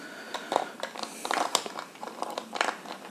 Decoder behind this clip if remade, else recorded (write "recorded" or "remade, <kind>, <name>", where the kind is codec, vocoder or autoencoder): recorded